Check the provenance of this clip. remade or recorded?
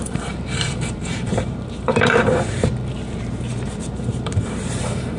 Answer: remade